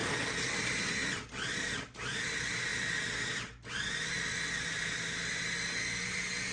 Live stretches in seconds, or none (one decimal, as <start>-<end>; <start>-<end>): 0.0-6.5